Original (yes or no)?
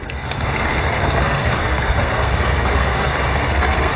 no